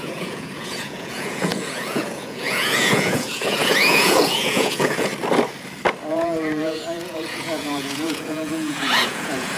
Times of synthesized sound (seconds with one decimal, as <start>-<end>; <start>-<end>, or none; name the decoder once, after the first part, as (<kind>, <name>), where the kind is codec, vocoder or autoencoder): 0.0-5.1 (vocoder, Vocos); 6.1-9.6